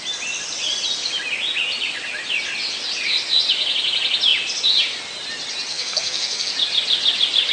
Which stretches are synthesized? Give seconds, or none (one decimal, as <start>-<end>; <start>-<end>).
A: 5.7-6.5